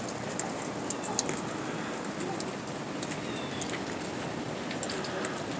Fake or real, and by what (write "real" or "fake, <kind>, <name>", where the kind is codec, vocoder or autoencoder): real